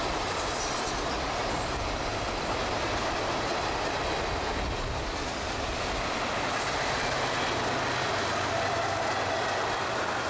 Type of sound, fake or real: real